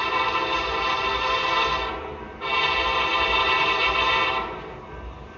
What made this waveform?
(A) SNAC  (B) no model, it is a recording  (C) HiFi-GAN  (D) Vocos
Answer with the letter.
B